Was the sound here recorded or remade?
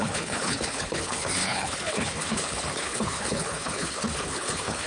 remade